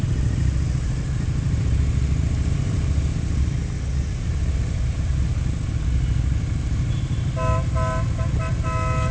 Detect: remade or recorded recorded